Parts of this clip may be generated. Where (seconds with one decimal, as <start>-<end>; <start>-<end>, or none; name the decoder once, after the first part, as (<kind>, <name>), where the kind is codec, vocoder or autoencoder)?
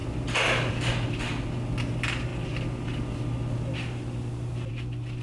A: none